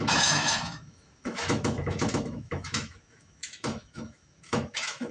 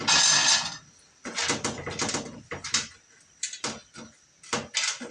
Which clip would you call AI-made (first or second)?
first